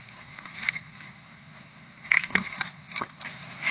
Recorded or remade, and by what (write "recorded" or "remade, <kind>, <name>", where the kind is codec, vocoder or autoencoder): remade, codec, SNAC